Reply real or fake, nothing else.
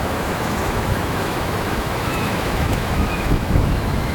fake